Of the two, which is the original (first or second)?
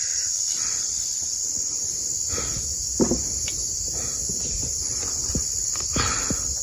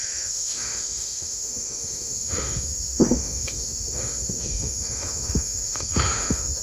first